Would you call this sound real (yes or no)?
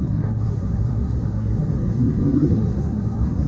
no